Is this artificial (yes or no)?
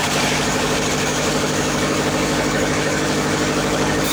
yes